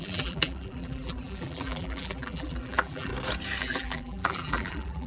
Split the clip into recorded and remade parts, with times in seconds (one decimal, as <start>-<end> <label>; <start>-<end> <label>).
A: 0.0-3.1 remade; 3.1-3.6 recorded; 3.6-5.1 remade

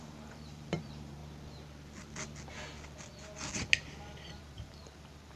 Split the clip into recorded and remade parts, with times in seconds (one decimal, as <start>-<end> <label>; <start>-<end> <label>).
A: 0.0-1.2 remade; 1.2-4.4 recorded; 4.4-5.4 remade